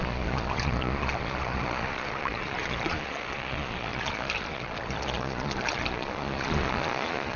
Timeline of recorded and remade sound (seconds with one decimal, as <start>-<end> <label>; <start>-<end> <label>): 0.0-7.4 remade

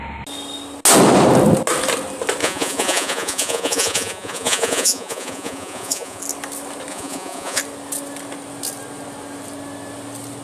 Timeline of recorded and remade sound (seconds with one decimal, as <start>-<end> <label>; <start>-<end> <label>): 0.0-2.4 recorded; 2.4-6.2 remade; 6.2-6.9 recorded; 6.9-7.6 remade; 7.6-10.4 recorded

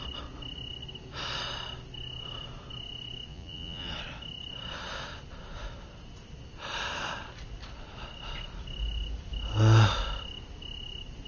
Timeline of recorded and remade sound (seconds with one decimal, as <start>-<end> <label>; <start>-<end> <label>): 0.0-3.3 recorded; 3.3-3.9 remade; 3.9-11.3 recorded

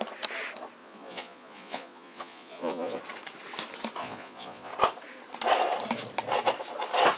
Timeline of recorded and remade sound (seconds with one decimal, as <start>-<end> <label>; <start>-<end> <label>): 0.0-0.8 recorded; 0.8-3.0 remade; 3.0-4.0 recorded; 4.0-4.7 remade; 4.7-7.2 recorded

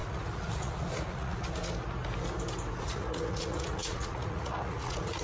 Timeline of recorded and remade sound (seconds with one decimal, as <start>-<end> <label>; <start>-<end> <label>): 0.0-1.6 remade; 1.6-2.8 recorded; 2.8-5.2 remade

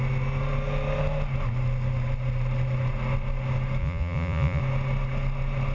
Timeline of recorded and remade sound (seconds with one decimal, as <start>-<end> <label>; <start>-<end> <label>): 0.0-3.8 recorded; 3.8-4.6 remade; 4.6-5.7 recorded